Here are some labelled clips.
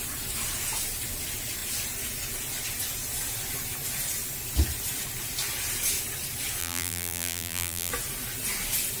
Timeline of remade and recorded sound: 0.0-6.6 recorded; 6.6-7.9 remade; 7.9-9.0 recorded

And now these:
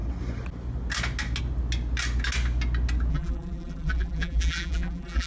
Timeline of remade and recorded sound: 0.0-3.1 recorded; 3.1-5.3 remade

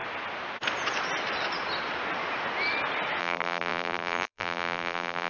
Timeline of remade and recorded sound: 0.0-3.2 recorded; 3.2-5.3 remade

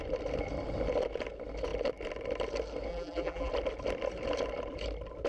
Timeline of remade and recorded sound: 0.0-2.9 recorded; 2.9-3.5 remade; 3.5-5.3 recorded

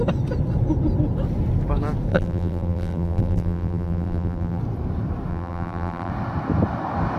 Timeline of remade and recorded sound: 0.0-2.1 recorded; 2.1-4.6 remade; 4.6-5.3 recorded; 5.3-6.1 remade; 6.1-7.2 recorded

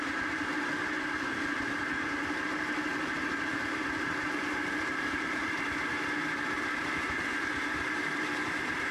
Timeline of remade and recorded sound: 0.0-2.9 remade; 2.9-4.0 recorded; 4.0-8.9 remade